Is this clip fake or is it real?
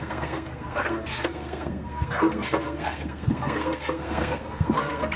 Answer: fake